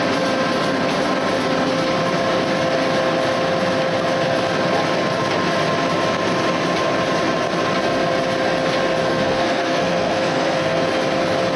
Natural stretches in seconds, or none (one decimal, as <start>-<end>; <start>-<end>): 0.0-9.0; 10.8-11.6